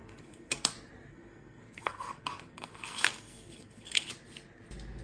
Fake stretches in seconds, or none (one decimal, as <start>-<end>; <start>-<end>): 0.0-0.7; 1.1-4.1